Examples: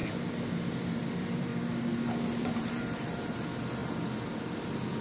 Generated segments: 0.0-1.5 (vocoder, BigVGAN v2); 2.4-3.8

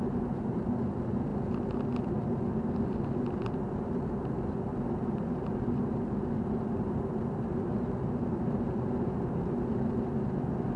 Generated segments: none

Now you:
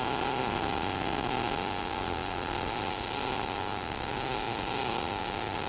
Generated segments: 2.2-5.2 (vocoder, BigVGAN v2)

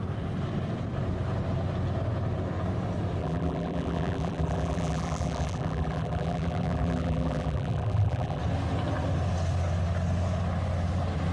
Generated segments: 3.2-8.4 (vocoder, BigVGAN v2)